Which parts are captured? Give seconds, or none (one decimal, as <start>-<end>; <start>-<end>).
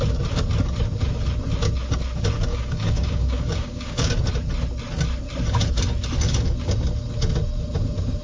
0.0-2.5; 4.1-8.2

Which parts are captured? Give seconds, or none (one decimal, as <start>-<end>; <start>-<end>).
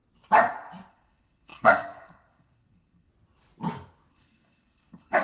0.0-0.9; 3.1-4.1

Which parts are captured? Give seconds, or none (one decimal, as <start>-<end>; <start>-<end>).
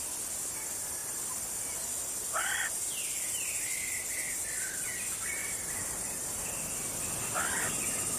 0.0-1.0; 4.4-5.4; 7.7-8.2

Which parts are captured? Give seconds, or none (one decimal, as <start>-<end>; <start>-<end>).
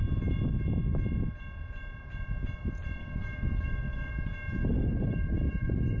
0.0-3.0; 4.1-4.6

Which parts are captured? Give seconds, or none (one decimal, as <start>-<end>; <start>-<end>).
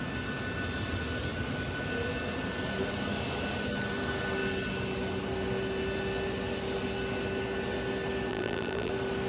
0.0-8.3; 8.9-9.3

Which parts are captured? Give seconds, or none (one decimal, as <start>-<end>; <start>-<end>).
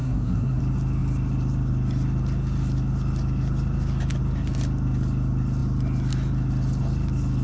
0.6-7.4